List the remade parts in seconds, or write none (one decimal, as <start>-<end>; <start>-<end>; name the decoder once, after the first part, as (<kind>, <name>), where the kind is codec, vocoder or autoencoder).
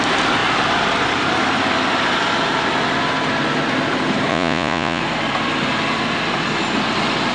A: 4.3-5.0 (vocoder, Vocos)